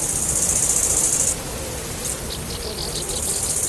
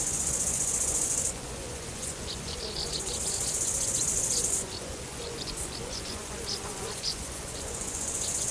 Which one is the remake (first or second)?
second